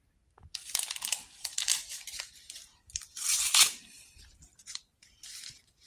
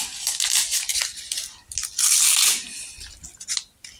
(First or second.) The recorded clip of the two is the second